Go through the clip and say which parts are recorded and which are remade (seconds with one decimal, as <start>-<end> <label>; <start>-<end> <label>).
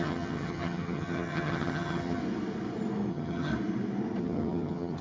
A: 0.0-2.2 remade; 2.2-3.1 recorded; 3.1-3.5 remade; 3.5-4.2 recorded; 4.2-5.0 remade